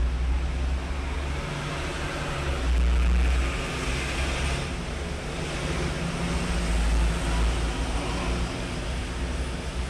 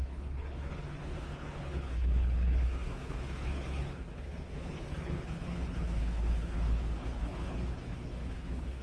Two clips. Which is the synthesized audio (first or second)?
second